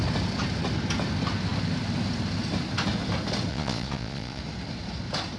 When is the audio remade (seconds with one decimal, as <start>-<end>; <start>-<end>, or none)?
3.5-4.4